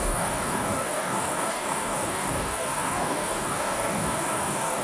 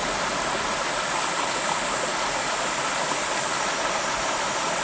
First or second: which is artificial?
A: first